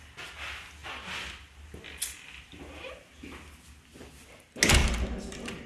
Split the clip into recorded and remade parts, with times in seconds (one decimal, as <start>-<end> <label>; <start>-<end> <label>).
0.0-4.8 recorded; 4.8-5.7 remade